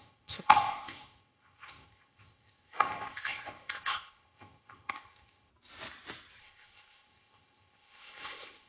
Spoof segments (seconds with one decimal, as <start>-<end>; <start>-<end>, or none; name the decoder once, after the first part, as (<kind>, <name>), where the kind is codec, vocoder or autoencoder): 0.0-5.5 (codec, ZipCodec); 6.4-8.7